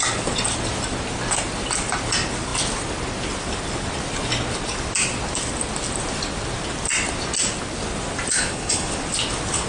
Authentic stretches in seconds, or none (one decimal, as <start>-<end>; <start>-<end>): 0.0-8.3; 8.9-9.7